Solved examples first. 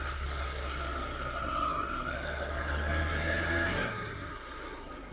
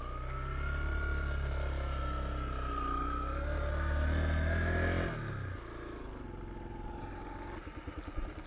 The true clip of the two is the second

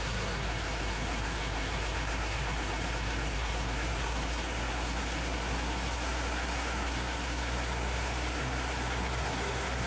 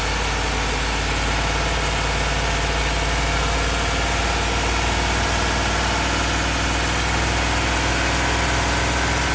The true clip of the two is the second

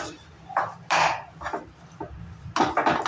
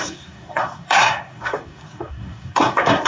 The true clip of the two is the first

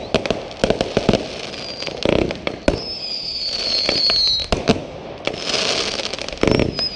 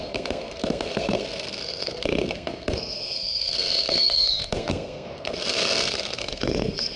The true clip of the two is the first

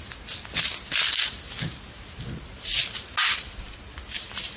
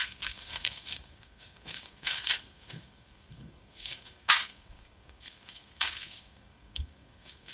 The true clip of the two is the first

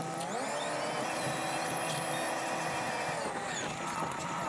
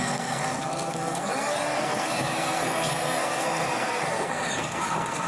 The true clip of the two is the first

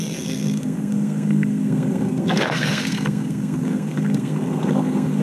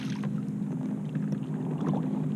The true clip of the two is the second